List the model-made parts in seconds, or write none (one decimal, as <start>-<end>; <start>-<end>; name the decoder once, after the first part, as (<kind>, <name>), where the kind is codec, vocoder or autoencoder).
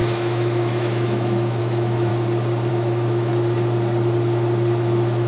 0.0-2.1 (autoencoder, DAC-VAE); 2.7-3.3